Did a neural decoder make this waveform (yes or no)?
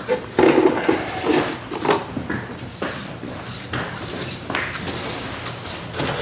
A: no